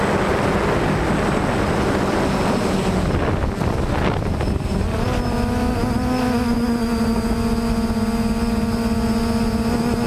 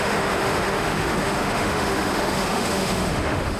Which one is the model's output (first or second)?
second